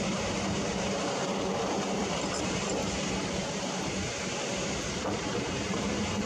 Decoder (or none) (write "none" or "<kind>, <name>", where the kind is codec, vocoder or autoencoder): vocoder, BigVGAN v2